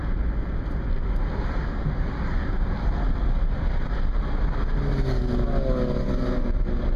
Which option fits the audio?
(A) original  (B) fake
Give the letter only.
A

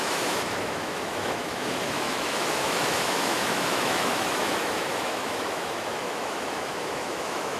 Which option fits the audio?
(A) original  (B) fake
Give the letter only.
B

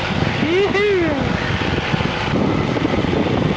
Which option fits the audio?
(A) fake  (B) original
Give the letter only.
B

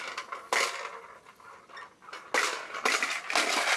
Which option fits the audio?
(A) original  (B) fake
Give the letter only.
A